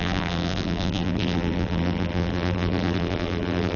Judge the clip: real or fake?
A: fake